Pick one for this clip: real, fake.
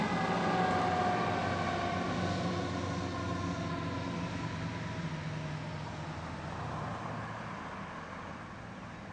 real